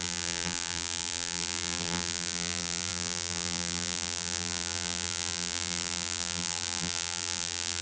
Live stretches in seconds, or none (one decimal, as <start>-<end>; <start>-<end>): none